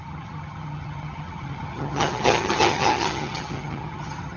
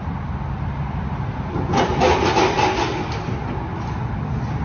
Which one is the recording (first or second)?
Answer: second